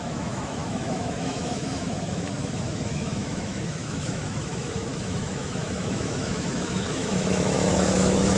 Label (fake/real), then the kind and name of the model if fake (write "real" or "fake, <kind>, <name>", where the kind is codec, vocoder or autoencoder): fake, autoencoder, DAC-VAE